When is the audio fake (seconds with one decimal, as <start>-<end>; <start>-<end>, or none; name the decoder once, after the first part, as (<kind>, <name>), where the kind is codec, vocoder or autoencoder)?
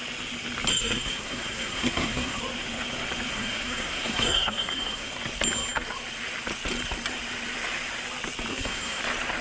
0.7-2.4 (codec, SNAC); 3.3-5.1; 8.5-9.0